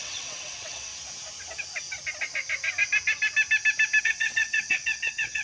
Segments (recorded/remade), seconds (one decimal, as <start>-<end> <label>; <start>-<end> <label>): 0.0-0.9 remade; 0.9-4.0 recorded; 4.0-5.4 remade